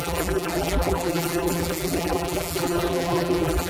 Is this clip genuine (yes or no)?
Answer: no